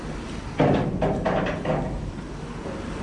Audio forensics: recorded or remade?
recorded